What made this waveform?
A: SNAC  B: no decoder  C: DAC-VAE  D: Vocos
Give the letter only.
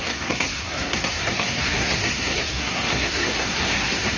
A